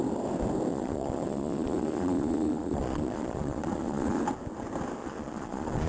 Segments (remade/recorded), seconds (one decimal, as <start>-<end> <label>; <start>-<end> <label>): 0.0-0.7 recorded; 0.7-4.2 remade; 4.2-5.0 recorded; 5.0-5.9 remade